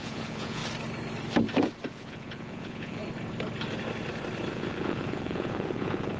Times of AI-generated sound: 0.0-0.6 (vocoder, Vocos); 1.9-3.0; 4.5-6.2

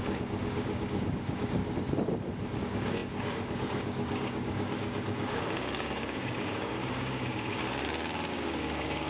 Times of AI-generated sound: 0.0-1.6 (codec, DAC); 2.6-7.6; 8.3-9.1

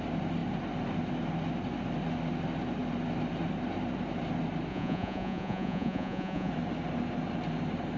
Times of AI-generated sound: 4.7-6.5 (vocoder, Vocos)